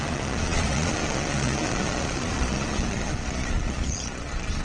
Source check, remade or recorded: remade